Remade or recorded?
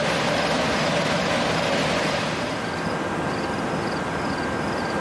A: recorded